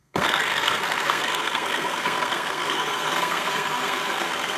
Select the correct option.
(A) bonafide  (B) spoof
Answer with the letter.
B